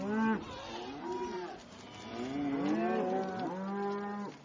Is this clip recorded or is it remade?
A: recorded